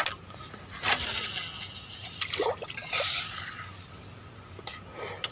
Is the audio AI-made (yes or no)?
no